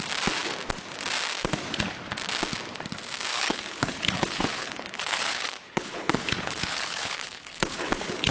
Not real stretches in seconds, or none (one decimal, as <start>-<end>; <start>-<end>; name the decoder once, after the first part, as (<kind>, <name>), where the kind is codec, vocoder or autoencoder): 3.3-8.3 (codec, HILCodec)